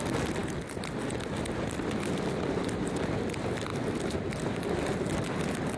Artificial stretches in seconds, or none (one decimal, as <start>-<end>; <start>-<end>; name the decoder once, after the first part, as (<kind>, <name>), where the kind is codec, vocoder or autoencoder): none